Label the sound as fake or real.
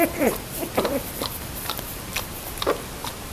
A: fake